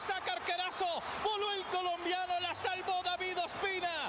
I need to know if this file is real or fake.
real